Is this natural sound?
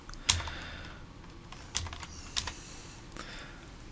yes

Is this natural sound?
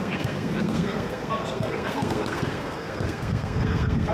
no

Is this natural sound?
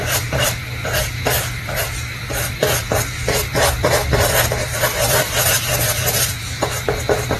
no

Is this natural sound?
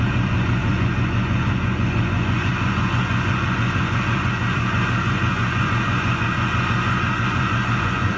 no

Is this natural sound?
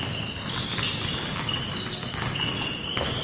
yes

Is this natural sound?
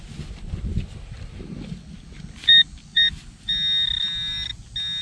yes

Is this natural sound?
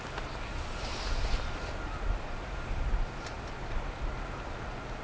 yes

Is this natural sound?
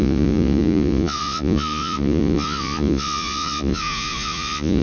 no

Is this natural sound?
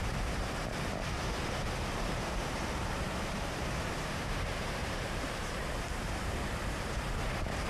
no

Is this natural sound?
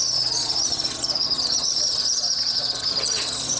no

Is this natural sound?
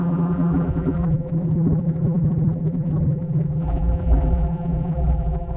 no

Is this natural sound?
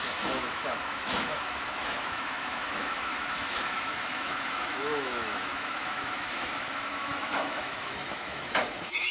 no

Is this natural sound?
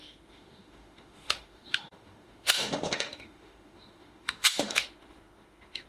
no